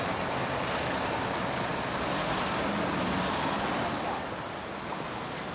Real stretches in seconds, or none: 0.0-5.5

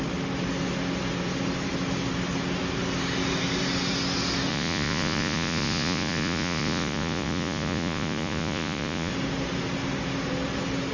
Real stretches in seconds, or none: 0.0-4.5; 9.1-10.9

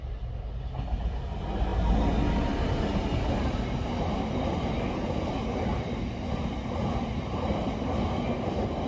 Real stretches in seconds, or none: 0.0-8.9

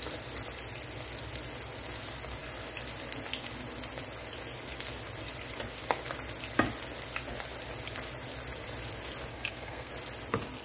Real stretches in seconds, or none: 0.0-9.3; 9.9-10.6